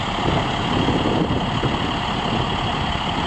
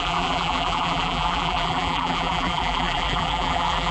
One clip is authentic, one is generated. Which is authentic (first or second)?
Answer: first